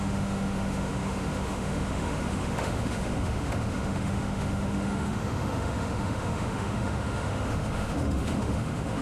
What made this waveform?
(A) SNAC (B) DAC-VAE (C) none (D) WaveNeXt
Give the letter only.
B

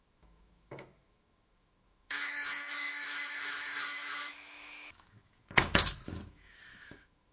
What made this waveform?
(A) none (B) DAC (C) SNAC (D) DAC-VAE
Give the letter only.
D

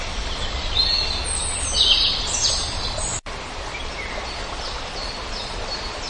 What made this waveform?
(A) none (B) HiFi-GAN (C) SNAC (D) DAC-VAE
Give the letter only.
A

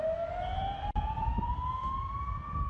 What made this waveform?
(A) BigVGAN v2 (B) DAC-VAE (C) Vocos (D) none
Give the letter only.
D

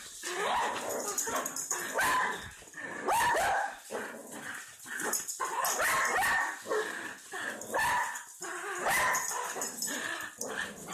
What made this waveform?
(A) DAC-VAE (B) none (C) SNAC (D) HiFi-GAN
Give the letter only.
B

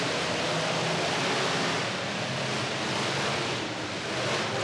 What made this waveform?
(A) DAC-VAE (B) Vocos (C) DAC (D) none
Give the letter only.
D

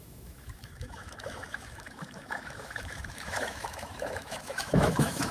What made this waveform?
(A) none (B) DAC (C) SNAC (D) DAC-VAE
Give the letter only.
D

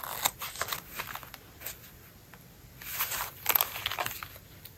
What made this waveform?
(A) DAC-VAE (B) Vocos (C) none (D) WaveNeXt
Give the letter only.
C